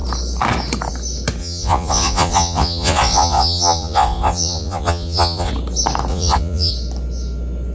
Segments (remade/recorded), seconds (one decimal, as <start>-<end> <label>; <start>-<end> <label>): 0.0-1.4 recorded; 1.4-5.5 remade; 5.5-6.1 recorded; 6.1-6.7 remade; 6.7-7.7 recorded